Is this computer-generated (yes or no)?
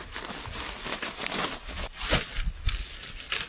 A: no